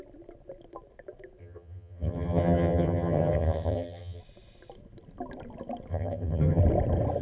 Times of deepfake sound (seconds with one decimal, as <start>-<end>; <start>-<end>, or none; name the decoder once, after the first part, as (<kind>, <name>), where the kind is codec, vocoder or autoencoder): 1.4-4.2 (vocoder, HiFi-GAN); 5.9-6.6